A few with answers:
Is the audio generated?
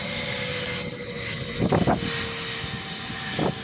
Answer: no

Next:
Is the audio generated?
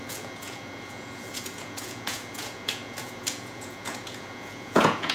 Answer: yes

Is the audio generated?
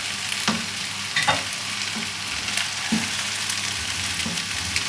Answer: no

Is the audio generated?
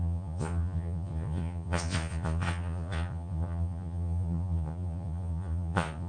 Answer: yes